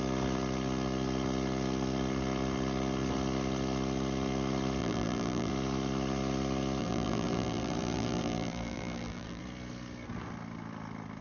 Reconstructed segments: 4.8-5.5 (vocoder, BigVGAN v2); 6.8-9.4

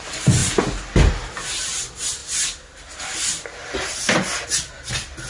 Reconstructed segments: none

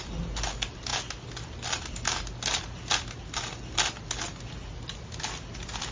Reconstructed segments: none

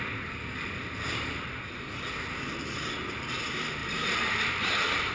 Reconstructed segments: 3.8-5.1 (vocoder, BigVGAN v2)

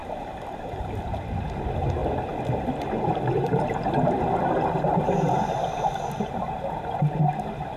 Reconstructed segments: 0.0-7.8 (vocoder, BigVGAN v2)

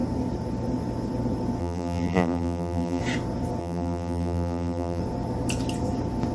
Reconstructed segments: 1.6-3.0 (vocoder, BigVGAN v2); 3.6-5.0

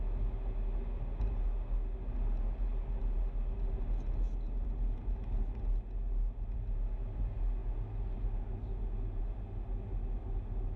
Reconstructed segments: none